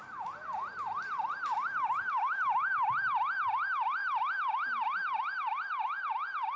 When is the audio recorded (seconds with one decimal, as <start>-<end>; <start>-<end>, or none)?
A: 0.0-6.6